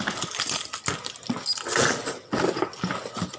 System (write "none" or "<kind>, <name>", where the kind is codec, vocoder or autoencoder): none